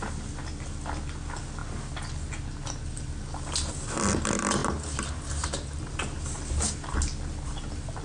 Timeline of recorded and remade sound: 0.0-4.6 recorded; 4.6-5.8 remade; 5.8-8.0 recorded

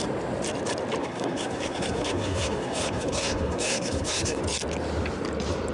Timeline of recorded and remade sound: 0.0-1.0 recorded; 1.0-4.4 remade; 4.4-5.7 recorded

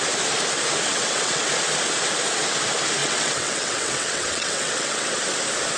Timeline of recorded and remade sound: 0.0-0.9 recorded; 0.9-1.5 remade; 1.5-3.0 recorded; 3.0-5.1 remade; 5.1-5.8 recorded

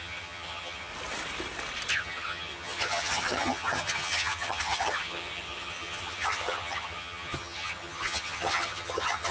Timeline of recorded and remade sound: 0.0-0.9 remade; 0.9-1.9 recorded; 1.9-9.3 remade